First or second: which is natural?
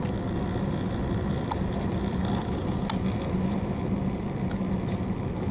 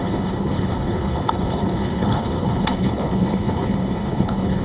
first